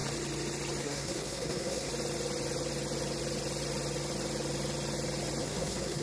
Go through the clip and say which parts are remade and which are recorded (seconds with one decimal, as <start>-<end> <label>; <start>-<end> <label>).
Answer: 0.0-0.8 recorded; 0.8-1.9 remade; 1.9-5.4 recorded; 5.4-6.0 remade

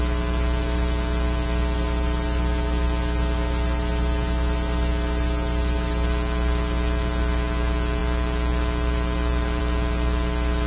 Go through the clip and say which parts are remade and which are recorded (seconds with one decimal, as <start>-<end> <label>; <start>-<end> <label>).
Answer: 0.0-10.7 recorded